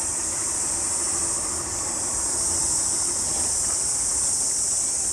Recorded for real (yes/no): yes